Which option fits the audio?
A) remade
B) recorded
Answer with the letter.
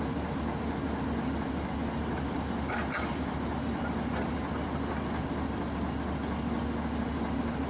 B